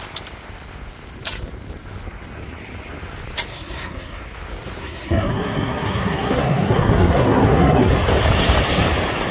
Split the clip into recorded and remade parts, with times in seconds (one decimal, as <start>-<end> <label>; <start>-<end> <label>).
0.0-3.5 recorded; 3.5-4.2 remade; 4.2-4.8 recorded; 4.8-7.9 remade; 7.9-9.3 recorded

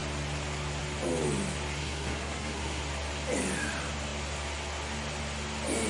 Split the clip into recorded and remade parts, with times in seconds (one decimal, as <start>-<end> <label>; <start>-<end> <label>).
0.0-1.8 recorded; 1.8-2.8 remade; 2.8-5.9 recorded